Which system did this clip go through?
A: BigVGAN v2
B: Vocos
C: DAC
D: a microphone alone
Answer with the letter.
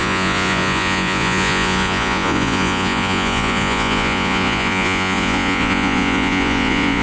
B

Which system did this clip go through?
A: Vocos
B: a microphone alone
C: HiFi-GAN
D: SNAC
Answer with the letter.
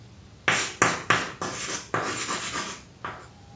B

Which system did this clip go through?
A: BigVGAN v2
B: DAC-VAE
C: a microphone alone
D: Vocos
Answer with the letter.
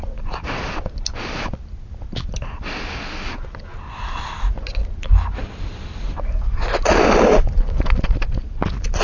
C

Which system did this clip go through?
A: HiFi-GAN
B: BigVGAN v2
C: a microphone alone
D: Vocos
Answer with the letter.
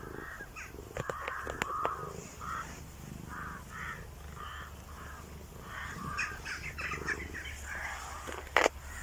C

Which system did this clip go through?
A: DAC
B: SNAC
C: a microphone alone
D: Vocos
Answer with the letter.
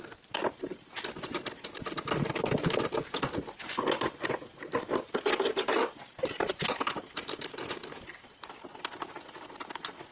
C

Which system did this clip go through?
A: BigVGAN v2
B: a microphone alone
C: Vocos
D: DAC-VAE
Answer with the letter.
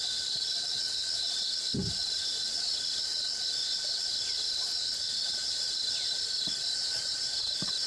B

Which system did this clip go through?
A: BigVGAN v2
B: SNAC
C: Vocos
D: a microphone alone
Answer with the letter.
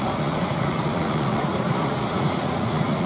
C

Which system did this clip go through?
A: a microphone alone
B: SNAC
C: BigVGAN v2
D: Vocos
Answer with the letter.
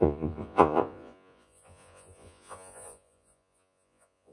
D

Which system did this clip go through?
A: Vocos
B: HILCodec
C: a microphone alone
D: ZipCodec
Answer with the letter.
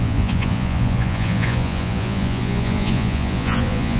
A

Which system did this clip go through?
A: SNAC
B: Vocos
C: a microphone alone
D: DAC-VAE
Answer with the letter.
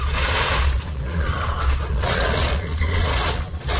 B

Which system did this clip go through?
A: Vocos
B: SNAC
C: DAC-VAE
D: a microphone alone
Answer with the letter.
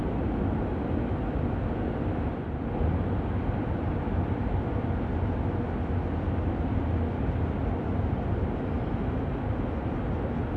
D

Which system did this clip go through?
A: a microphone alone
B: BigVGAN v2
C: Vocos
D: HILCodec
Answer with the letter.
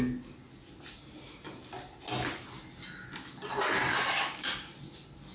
A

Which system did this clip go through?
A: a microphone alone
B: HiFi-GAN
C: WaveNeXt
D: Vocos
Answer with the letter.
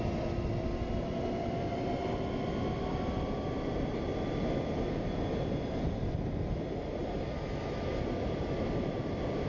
A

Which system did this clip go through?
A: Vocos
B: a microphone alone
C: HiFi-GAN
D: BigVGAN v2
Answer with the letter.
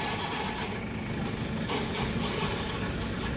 B